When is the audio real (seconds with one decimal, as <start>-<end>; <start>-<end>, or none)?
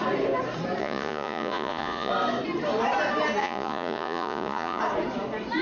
0.0-0.8; 2.1-3.4; 4.8-5.6